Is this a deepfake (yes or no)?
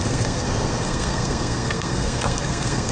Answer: yes